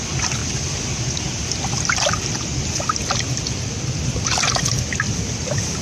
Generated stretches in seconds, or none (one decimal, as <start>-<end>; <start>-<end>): none